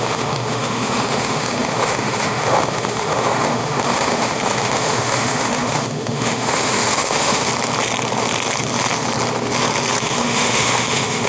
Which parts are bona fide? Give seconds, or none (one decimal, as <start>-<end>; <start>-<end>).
7.5-10.0